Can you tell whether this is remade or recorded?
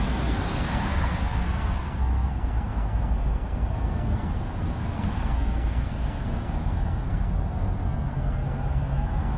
remade